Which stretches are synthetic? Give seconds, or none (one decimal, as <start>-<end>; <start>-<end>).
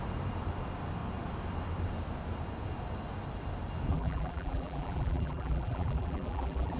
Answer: 3.9-6.8